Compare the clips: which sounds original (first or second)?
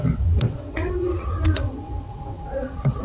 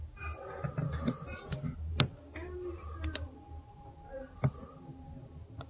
second